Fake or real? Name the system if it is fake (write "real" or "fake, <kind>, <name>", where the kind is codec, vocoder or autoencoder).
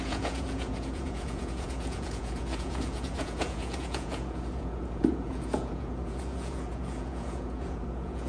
fake, vocoder, Vocos